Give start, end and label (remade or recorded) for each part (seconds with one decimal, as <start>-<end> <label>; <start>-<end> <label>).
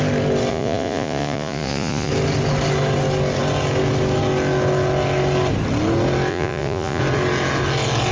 0.0-0.5 recorded; 0.5-2.1 remade; 2.1-6.3 recorded; 6.3-7.0 remade; 7.0-8.1 recorded